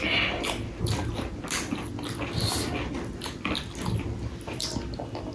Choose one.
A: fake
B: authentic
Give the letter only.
B